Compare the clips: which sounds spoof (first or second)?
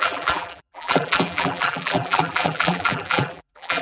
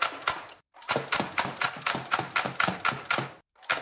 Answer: first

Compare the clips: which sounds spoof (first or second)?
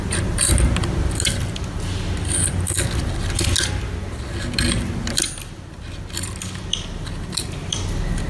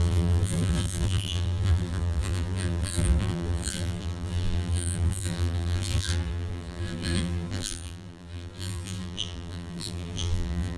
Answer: second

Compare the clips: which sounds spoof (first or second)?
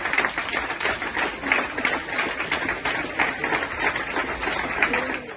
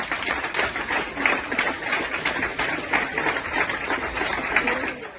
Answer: second